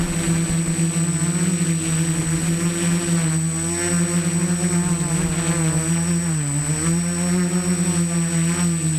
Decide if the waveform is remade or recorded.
recorded